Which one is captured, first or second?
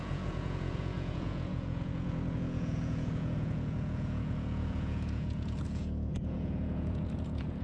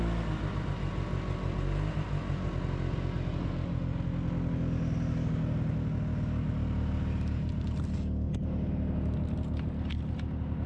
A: second